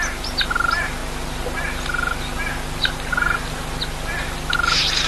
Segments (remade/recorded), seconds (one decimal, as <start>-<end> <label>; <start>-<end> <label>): 0.0-5.1 recorded